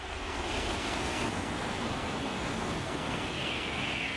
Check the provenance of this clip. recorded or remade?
remade